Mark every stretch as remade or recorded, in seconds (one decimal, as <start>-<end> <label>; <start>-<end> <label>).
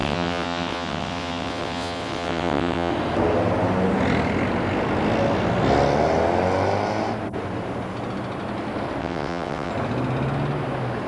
0.0-2.9 remade; 2.9-9.0 recorded; 9.0-9.7 remade; 9.7-11.1 recorded